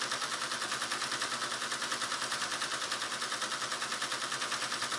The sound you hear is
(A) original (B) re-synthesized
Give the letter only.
A